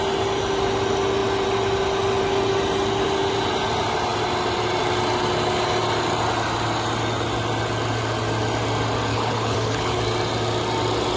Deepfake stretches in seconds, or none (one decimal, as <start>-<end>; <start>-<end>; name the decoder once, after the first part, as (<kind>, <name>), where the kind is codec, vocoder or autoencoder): 9.1-10.0 (codec, HILCodec)